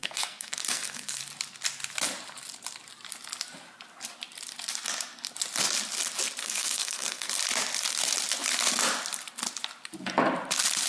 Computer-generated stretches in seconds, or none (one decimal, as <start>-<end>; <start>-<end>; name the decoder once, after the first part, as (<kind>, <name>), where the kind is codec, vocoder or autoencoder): 0.0-1.2 (codec, SNAC); 6.4-7.3